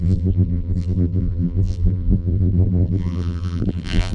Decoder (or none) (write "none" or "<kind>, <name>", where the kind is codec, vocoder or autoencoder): vocoder, BigVGAN v2